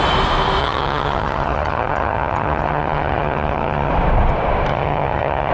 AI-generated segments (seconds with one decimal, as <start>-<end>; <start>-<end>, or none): 0.6-3.9; 4.7-5.5